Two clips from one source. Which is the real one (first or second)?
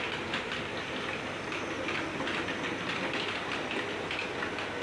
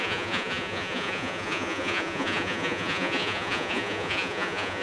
first